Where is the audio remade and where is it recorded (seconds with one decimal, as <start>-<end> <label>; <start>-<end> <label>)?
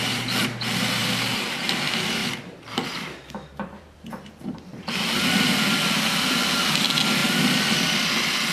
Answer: 0.0-1.0 recorded; 1.0-1.6 remade; 1.6-2.2 recorded; 2.2-5.2 remade; 5.2-7.2 recorded; 7.2-8.1 remade; 8.1-8.5 recorded